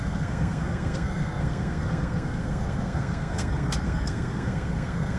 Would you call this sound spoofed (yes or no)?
yes